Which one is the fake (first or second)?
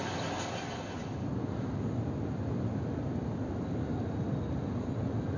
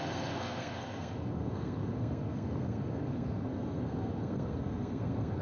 second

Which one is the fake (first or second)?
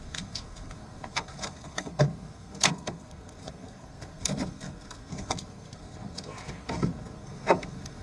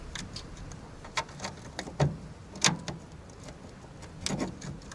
first